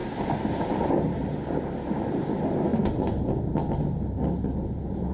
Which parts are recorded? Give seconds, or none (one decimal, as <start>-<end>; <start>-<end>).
1.6-2.7; 3.5-5.1